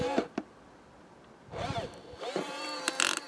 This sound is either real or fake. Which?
real